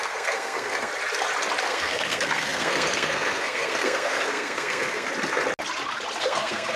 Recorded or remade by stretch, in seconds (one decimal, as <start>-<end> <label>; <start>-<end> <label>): 0.0-0.9 remade; 0.9-1.6 recorded; 1.6-5.1 remade; 5.1-6.2 recorded; 6.2-6.8 remade